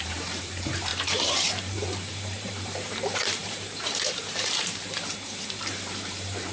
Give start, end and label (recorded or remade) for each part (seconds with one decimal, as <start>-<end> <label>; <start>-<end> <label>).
0.0-6.5 remade